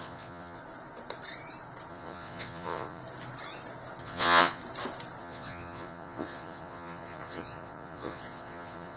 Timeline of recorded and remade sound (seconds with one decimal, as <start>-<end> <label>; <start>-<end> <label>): 0.0-0.6 remade; 0.6-1.9 recorded; 1.9-3.0 remade; 3.0-4.0 recorded; 4.0-4.6 remade; 4.6-5.2 recorded; 5.2-9.0 remade

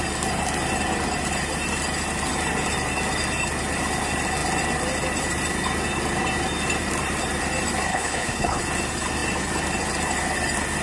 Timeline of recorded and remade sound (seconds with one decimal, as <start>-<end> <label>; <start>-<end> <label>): 0.0-7.9 recorded; 7.9-8.6 remade; 8.6-10.8 recorded

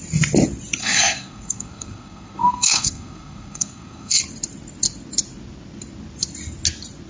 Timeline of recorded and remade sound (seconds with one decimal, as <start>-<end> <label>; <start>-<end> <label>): 0.0-0.8 recorded; 0.8-4.2 remade; 4.2-7.1 recorded

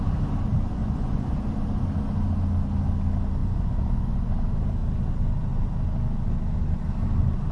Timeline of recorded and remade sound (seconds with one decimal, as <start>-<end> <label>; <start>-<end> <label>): 0.0-0.8 recorded; 0.8-1.5 remade; 1.5-3.4 recorded; 3.4-4.3 remade; 4.3-7.5 recorded